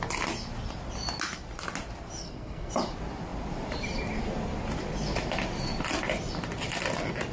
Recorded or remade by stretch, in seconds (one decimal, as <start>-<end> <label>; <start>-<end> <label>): 0.0-2.2 recorded; 2.2-2.7 remade; 2.7-7.3 recorded